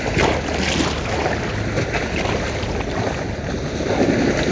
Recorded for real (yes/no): yes